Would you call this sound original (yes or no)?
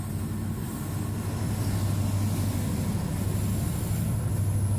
yes